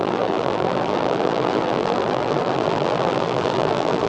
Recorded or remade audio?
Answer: remade